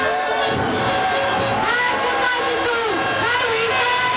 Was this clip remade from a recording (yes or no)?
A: no